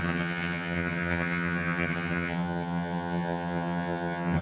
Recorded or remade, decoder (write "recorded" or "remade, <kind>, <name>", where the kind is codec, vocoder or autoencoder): remade, vocoder, HiFi-GAN